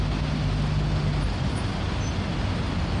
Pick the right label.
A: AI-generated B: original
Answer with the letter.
B